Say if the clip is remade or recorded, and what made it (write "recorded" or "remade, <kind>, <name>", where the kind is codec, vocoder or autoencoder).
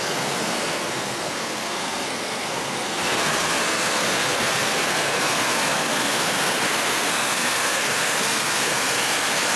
remade, codec, SNAC